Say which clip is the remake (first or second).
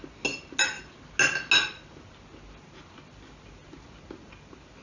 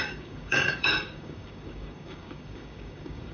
second